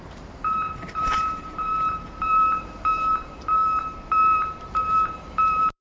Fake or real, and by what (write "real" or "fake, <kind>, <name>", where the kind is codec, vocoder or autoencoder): fake, vocoder, BigVGAN v2